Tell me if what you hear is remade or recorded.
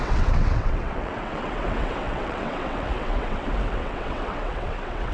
remade